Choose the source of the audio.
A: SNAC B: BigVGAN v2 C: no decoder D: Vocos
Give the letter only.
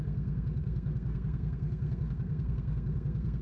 A